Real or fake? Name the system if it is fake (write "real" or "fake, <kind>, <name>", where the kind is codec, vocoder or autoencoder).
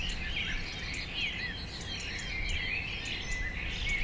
real